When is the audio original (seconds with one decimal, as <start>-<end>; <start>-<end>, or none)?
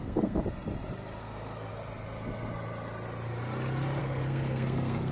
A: 0.4-1.2; 1.7-4.0